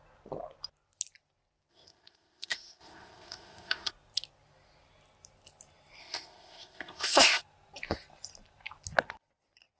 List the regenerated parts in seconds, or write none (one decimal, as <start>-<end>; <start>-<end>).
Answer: 1.7-3.9; 6.0-7.4